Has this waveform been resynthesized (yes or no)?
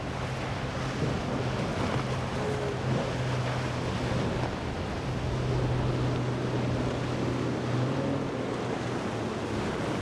no